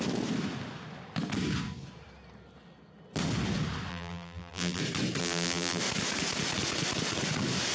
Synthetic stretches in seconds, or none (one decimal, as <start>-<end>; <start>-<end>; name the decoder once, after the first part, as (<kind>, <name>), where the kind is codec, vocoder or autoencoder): 3.9-4.8 (vocoder, BigVGAN v2); 5.2-5.8